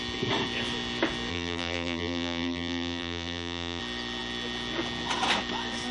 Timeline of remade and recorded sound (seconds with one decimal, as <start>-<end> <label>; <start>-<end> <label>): 0.0-1.3 recorded; 1.3-3.8 remade; 3.8-5.9 recorded